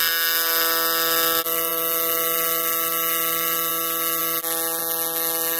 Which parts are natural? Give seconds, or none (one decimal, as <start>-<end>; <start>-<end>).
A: 0.0-5.6